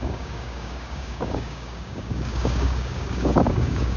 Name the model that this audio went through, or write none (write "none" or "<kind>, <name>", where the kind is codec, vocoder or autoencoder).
codec, DAC